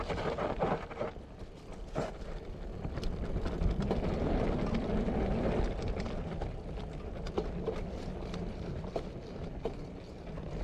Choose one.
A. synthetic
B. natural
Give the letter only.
B